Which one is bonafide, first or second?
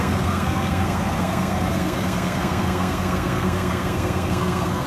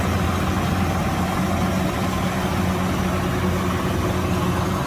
second